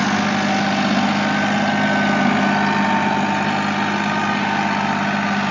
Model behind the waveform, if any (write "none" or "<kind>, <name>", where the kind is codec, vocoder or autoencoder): none